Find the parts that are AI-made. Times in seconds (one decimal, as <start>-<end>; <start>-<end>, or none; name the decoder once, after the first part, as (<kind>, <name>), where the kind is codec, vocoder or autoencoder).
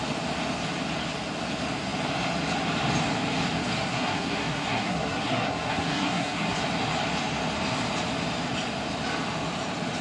3.9-6.6 (codec, SNAC)